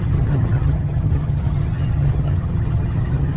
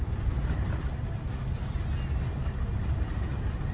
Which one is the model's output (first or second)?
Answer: first